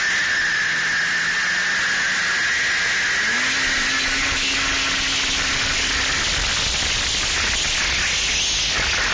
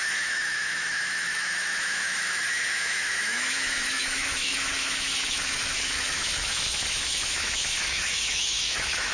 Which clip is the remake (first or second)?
second